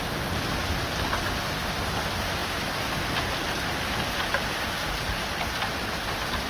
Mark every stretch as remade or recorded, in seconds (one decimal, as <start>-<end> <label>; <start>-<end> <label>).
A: 0.0-6.5 recorded